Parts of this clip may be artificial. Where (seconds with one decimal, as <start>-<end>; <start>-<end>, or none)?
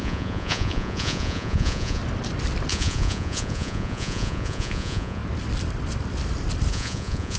0.0-2.0; 2.7-5.2; 6.7-7.4